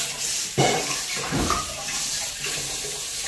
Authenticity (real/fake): fake